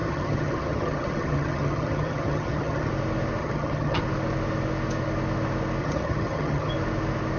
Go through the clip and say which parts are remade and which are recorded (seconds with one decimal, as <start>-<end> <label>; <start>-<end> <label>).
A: 0.0-2.9 remade; 2.9-3.4 recorded; 3.4-4.0 remade; 4.0-5.8 recorded; 5.8-6.7 remade; 6.7-7.4 recorded